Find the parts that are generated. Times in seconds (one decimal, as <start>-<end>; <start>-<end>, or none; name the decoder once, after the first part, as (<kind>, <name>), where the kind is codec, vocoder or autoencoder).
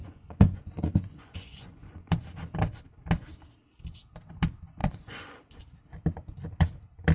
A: 0.0-2.1 (vocoder, Vocos); 4.8-5.6